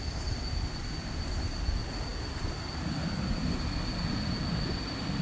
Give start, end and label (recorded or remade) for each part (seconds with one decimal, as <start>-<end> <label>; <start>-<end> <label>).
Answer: 0.0-5.2 recorded